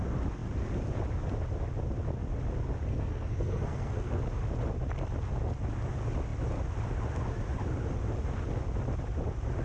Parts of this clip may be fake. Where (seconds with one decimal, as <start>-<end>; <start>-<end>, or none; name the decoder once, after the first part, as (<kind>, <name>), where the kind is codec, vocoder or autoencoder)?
2.9-4.2 (codec, SNAC)